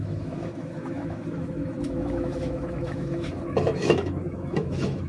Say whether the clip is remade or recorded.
remade